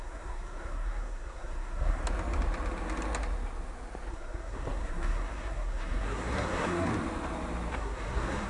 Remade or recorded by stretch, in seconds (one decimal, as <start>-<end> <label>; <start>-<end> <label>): 0.0-2.0 remade; 2.0-4.1 recorded; 4.1-6.9 remade; 6.9-7.7 recorded; 7.7-8.5 remade